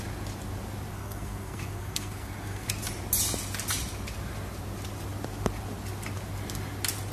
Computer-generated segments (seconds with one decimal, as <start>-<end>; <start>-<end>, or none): 0.9-2.7